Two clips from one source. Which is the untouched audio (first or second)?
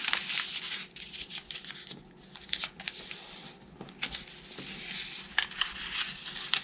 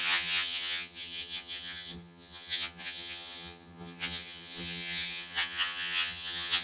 first